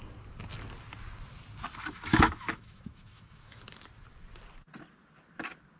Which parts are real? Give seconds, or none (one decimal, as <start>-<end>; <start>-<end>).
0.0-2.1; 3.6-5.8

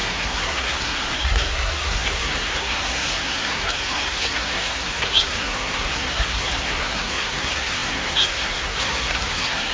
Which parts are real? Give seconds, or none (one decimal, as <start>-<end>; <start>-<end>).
none

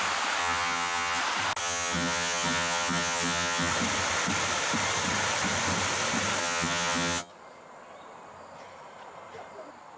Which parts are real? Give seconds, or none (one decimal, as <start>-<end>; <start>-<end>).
0.0-0.4; 1.2-1.6; 3.7-6.4; 7.3-10.0

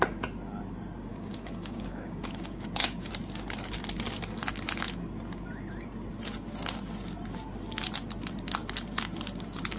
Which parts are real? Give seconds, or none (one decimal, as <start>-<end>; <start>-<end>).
0.0-1.1; 3.1-9.8